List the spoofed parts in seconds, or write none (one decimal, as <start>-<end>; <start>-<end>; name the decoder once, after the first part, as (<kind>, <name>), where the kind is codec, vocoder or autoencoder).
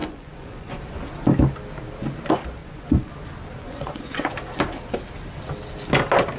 0.0-0.8 (vocoder, Vocos); 2.6-3.1; 3.6-4.3